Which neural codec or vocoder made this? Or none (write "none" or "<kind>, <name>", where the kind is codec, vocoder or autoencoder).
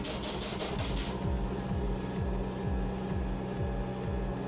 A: none